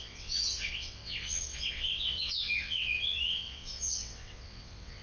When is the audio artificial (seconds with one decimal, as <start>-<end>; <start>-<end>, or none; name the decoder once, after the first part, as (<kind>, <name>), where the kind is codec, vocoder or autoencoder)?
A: 0.0-5.0 (vocoder, WaveNeXt)